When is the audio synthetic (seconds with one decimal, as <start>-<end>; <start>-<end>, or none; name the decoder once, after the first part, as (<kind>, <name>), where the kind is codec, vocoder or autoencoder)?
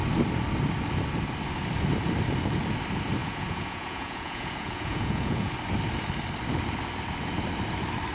3.2-5.5 (vocoder, Vocos)